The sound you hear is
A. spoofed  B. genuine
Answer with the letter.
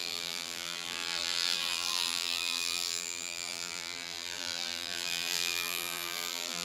A